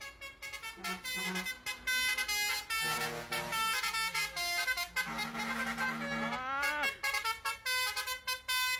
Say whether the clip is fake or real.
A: real